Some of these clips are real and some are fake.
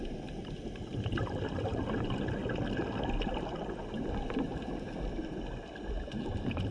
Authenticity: real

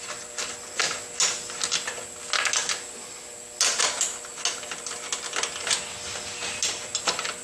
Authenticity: real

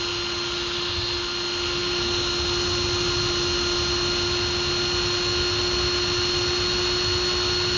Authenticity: real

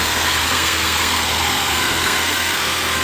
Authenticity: fake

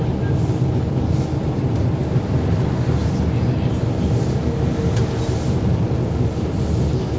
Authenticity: real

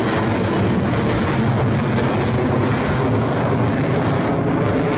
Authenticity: real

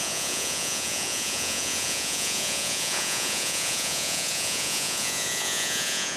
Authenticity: fake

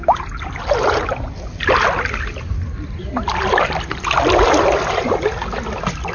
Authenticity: real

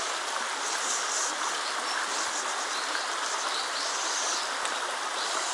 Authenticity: real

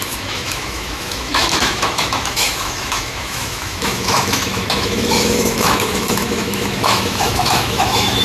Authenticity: fake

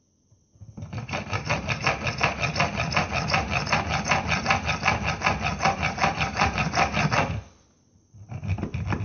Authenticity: real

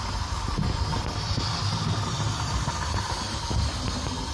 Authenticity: real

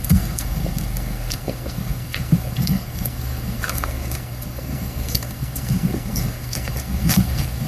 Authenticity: fake